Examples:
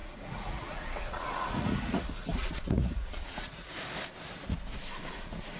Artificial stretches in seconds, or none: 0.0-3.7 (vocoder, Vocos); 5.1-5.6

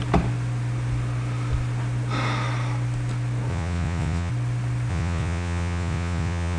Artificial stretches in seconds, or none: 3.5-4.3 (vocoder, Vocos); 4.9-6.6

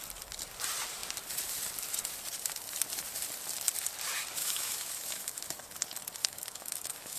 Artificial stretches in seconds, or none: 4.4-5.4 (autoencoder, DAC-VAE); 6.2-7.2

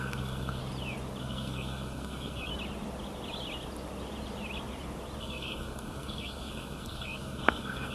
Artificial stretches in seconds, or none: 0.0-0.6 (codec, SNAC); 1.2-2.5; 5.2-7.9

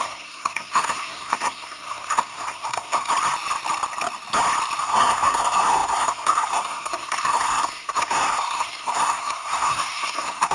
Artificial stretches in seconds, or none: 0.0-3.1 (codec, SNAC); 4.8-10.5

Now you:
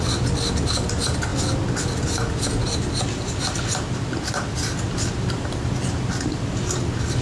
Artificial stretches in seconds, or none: none

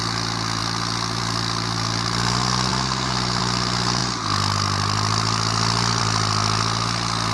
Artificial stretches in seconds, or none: none

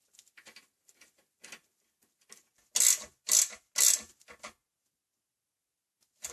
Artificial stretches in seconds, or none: none